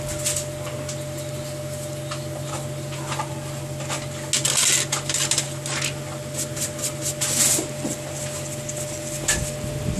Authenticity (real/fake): real